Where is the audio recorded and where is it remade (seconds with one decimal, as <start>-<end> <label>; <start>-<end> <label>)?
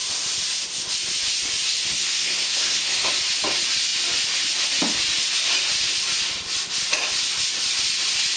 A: 0.0-1.9 recorded; 1.9-3.1 remade; 3.1-8.4 recorded